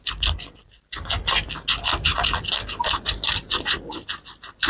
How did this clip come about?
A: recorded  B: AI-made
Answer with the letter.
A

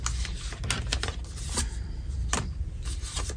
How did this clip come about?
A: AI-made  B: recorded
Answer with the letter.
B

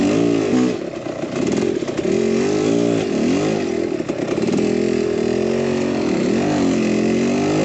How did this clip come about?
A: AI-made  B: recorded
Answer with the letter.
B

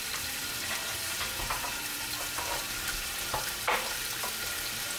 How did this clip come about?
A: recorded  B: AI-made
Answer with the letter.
B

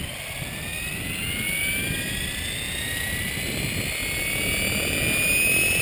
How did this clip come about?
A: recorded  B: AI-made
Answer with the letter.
A